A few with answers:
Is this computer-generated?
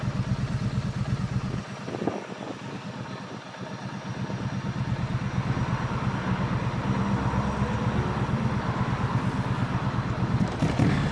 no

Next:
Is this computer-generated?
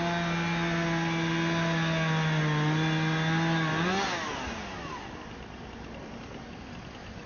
no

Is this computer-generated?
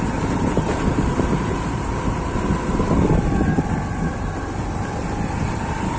no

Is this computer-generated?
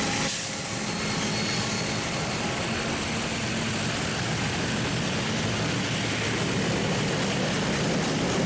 no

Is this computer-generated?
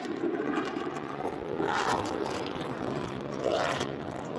yes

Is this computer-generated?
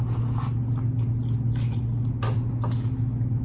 no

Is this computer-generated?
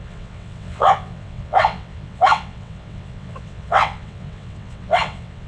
yes